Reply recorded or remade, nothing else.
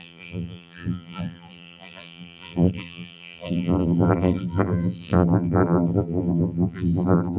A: remade